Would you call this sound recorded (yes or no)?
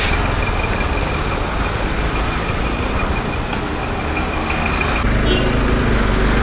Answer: yes